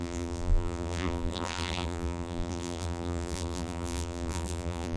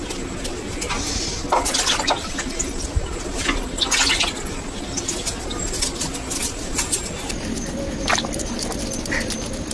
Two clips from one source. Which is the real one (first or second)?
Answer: second